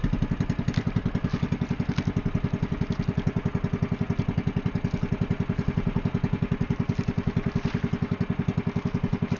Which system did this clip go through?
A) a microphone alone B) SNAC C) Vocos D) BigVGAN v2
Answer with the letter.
A